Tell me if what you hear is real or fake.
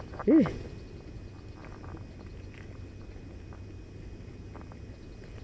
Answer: real